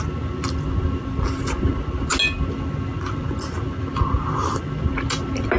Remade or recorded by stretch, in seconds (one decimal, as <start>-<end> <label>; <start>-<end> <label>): 0.0-5.6 recorded